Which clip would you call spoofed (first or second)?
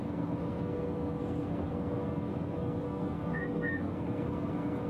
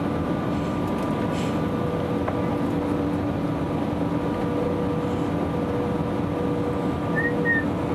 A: first